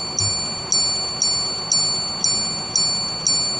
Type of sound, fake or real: real